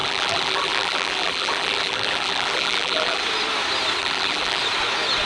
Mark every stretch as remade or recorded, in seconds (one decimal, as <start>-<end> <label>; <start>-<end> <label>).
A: 0.0-3.2 remade; 3.2-4.0 recorded; 4.0-4.6 remade; 4.6-5.3 recorded

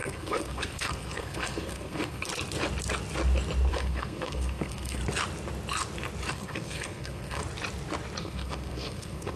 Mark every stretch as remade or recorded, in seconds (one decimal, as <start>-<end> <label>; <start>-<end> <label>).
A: 0.0-2.3 remade; 2.3-3.7 recorded; 3.7-5.0 remade; 5.0-6.3 recorded; 6.3-7.4 remade; 7.4-8.2 recorded; 8.2-9.4 remade

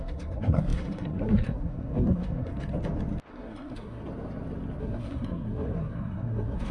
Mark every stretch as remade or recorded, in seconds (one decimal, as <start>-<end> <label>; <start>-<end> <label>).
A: 0.0-2.5 remade; 2.5-3.3 recorded; 3.3-4.0 remade; 4.0-4.8 recorded; 4.8-6.7 remade

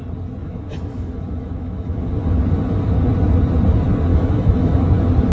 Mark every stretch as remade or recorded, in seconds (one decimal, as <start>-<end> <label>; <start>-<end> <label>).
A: 0.0-0.4 recorded; 0.4-2.1 remade; 2.1-4.1 recorded; 4.1-4.7 remade; 4.7-5.3 recorded

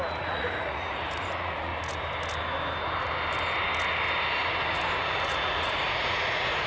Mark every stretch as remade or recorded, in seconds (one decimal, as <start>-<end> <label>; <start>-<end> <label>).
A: 0.0-1.7 remade; 1.7-5.0 recorded; 5.0-6.7 remade

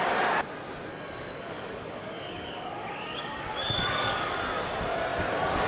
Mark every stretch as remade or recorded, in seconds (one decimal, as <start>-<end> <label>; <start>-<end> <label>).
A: 0.0-0.9 recorded; 0.9-4.3 remade; 4.3-5.7 recorded